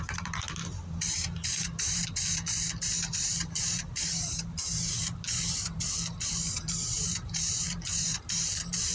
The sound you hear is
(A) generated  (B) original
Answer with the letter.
A